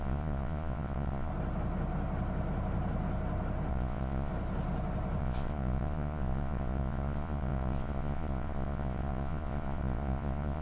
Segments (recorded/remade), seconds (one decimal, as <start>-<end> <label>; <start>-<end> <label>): 0.0-1.3 remade; 1.3-3.7 recorded; 3.7-4.3 remade; 4.3-5.2 recorded; 5.2-10.6 remade